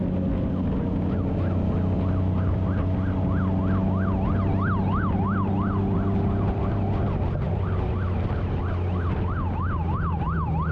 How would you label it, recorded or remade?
recorded